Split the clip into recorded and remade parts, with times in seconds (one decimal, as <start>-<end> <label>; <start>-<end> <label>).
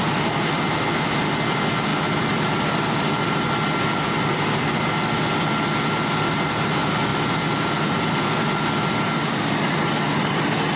0.0-7.1 recorded; 7.1-7.7 remade; 7.7-10.8 recorded